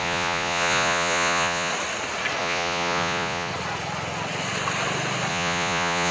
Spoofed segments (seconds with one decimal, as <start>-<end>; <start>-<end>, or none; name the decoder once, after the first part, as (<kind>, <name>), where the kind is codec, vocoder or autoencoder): 0.0-1.7 (vocoder, Vocos); 2.4-3.5; 5.3-6.1